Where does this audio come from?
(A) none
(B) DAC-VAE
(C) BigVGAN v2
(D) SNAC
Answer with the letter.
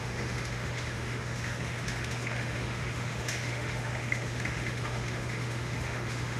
B